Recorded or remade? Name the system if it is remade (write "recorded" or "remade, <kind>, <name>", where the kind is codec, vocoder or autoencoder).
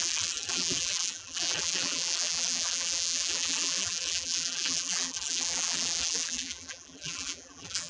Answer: remade, vocoder, BigVGAN v2